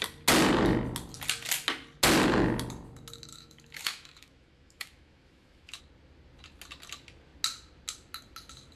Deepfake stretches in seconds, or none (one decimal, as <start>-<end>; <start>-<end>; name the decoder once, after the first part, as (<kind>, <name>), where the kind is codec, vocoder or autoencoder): 3.3-5.8 (autoencoder, DAC-VAE)